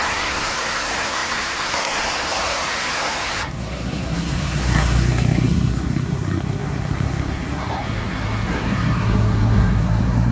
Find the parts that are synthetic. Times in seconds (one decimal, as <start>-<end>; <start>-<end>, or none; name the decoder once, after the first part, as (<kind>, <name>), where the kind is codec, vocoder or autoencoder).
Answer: 0.0-10.3 (codec, SNAC)